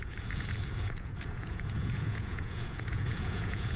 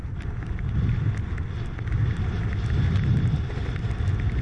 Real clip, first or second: second